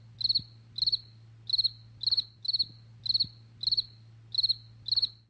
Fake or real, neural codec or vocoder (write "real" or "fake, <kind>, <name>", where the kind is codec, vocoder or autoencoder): real